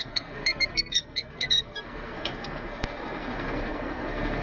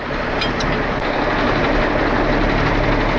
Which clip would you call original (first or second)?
second